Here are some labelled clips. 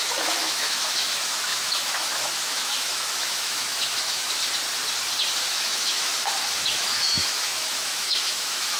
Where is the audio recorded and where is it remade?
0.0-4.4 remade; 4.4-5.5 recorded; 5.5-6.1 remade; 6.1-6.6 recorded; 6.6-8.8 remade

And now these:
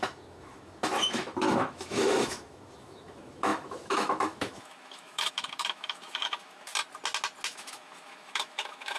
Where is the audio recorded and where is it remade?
0.0-6.7 remade; 6.7-7.5 recorded; 7.5-9.0 remade

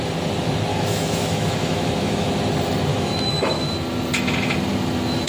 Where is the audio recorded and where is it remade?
0.0-0.7 recorded; 0.7-2.3 remade; 2.3-2.9 recorded; 2.9-3.7 remade; 3.7-5.3 recorded

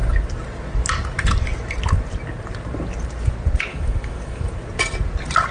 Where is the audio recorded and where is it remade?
0.0-3.7 recorded; 3.7-4.5 remade; 4.5-5.5 recorded

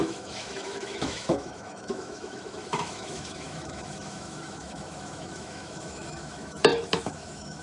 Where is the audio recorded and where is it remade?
0.0-7.6 remade

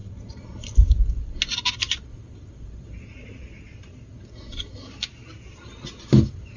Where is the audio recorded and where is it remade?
0.0-6.6 recorded